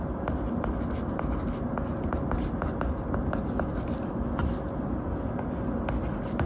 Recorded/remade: recorded